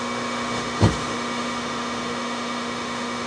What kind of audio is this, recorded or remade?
remade